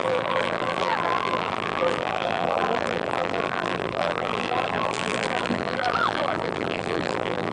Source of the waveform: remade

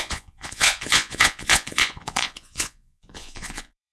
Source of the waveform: remade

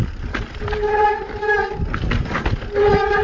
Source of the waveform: recorded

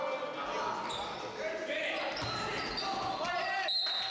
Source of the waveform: recorded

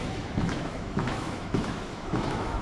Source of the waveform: remade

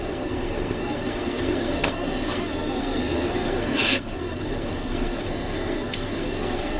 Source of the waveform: remade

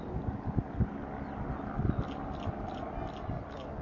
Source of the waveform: recorded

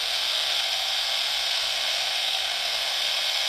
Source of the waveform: remade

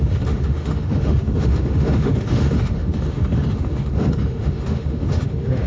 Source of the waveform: remade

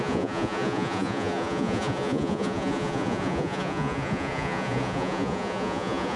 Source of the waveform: remade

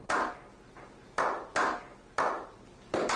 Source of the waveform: recorded